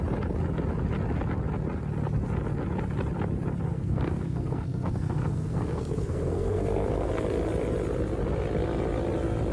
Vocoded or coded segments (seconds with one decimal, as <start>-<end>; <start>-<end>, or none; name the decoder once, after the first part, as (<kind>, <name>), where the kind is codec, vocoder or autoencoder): 3.7-7.1 (codec, SNAC)